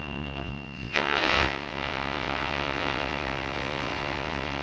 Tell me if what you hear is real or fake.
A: fake